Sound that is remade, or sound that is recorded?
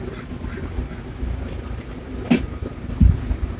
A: recorded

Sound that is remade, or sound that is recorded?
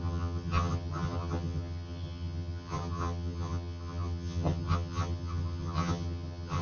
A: remade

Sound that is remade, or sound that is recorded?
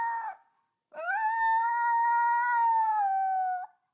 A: recorded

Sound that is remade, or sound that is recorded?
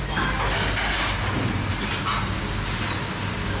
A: recorded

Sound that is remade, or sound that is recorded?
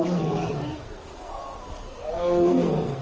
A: remade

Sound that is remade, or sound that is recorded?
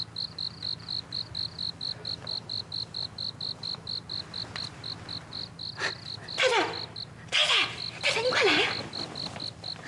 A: recorded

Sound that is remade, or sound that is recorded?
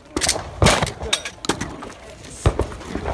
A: recorded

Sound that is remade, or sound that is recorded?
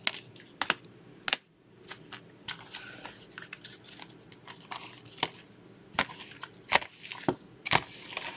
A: recorded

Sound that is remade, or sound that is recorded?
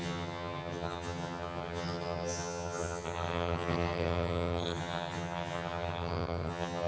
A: remade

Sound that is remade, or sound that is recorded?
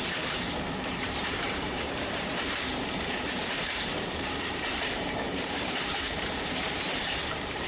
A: remade